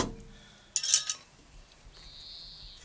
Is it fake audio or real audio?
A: real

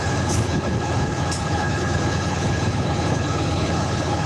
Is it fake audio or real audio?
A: fake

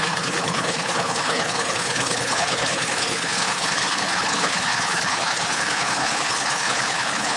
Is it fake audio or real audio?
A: fake